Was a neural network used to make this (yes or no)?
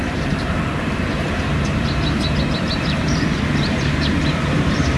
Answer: yes